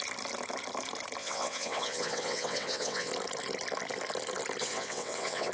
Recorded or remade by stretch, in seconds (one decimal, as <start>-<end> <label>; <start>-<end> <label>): 0.0-1.2 recorded; 1.2-3.1 remade; 3.1-4.6 recorded; 4.6-5.5 remade